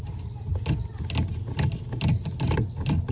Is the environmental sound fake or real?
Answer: real